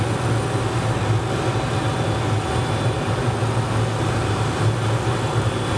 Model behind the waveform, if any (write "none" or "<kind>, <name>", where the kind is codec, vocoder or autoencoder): none